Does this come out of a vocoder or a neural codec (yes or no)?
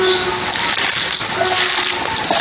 no